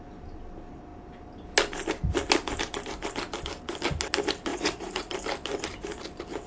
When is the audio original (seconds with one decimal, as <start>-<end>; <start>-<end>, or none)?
0.0-4.5; 5.1-6.5